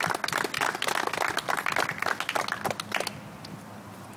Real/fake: real